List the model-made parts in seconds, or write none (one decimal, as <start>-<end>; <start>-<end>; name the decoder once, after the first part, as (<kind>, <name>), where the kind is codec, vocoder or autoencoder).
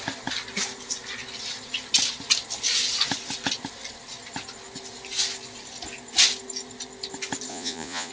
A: 7.5-8.1 (vocoder, Vocos)